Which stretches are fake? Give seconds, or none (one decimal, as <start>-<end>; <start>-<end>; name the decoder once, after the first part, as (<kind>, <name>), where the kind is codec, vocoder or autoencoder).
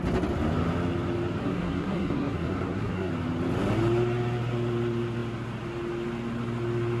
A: 1.4-3.1 (codec, SNAC)